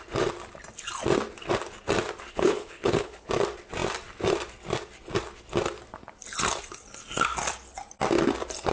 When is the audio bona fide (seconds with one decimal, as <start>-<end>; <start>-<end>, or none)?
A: 0.0-2.3; 3.3-8.7